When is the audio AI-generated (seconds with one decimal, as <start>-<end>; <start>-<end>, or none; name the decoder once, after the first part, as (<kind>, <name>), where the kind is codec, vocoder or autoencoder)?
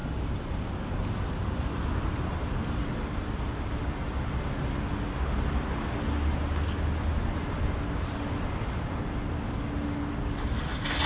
0.0-4.7 (vocoder, BigVGAN v2)